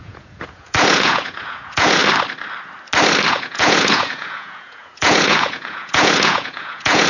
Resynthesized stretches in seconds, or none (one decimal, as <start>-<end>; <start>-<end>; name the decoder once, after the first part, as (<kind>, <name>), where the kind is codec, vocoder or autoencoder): 0.0-2.0 (vocoder, Vocos); 3.3-7.1